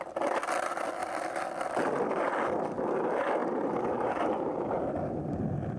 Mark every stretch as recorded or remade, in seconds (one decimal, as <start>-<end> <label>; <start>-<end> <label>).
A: 0.0-1.0 recorded; 1.0-2.2 remade; 2.2-3.4 recorded; 3.4-5.1 remade; 5.1-5.8 recorded

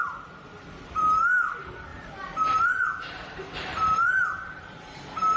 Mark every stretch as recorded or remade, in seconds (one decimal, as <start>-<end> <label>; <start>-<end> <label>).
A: 0.0-1.9 recorded; 1.9-5.4 remade

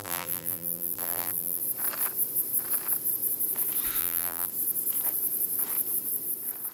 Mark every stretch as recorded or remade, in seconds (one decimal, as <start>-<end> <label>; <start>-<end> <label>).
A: 0.0-1.6 remade; 1.6-4.0 recorded; 4.0-4.5 remade; 4.5-6.7 recorded